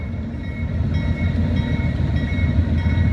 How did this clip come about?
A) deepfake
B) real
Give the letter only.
B